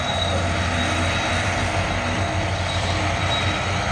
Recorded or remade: recorded